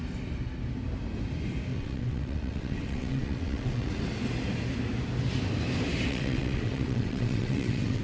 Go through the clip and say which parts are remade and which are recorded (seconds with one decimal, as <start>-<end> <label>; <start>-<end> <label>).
0.0-1.7 recorded; 1.7-3.9 remade; 3.9-6.1 recorded; 6.1-8.0 remade